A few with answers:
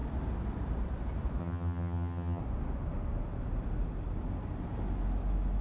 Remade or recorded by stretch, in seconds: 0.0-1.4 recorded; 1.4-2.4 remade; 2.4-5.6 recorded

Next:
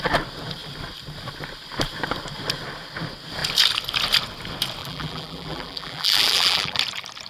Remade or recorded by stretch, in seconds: 0.0-4.8 recorded; 4.8-6.8 remade; 6.8-7.3 recorded

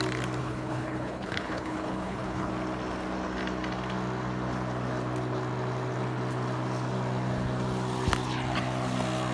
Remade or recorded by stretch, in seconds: 0.0-0.4 recorded; 0.4-2.5 remade; 2.5-9.3 recorded

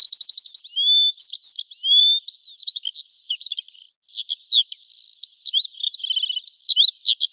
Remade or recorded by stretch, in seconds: 0.0-7.3 recorded